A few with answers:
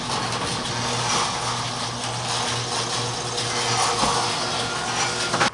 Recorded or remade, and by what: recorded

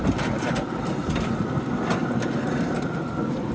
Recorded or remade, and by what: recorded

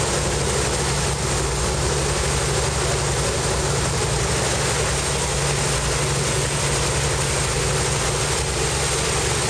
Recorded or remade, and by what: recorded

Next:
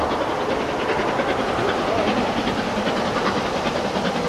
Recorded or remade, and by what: recorded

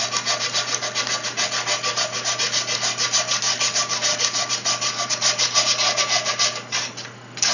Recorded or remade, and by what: recorded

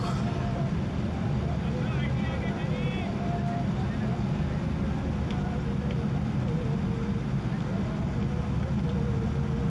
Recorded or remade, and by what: recorded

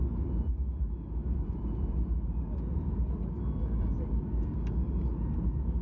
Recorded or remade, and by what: recorded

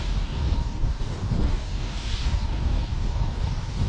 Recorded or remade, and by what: remade, codec, DAC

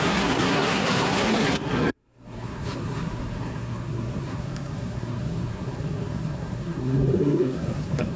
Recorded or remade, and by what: remade, codec, SNAC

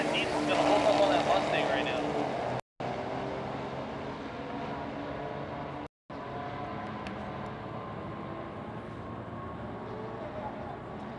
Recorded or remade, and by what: recorded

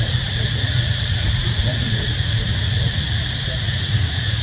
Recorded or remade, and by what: remade, vocoder, Vocos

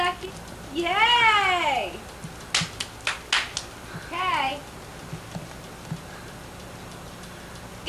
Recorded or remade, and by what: recorded